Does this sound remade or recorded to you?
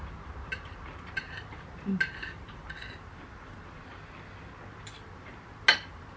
recorded